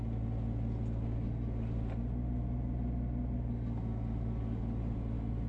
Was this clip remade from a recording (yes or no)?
no